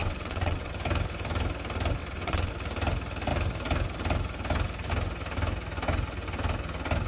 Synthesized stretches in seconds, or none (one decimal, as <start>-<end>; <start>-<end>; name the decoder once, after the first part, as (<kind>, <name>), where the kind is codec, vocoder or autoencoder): 0.0-0.7 (vocoder, WaveNeXt); 2.0-2.5